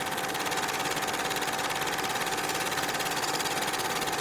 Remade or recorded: recorded